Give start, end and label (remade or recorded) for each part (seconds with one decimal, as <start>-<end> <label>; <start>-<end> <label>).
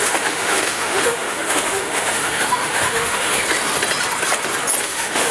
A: 0.0-3.4 remade; 3.4-4.8 recorded; 4.8-5.3 remade